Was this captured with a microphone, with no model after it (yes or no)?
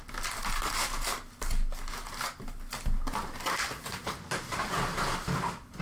yes